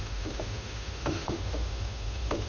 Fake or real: fake